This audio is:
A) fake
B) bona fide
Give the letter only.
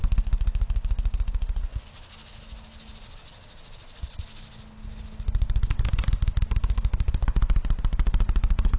B